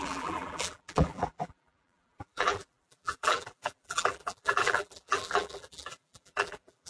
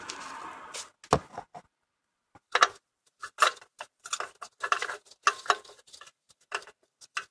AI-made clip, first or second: first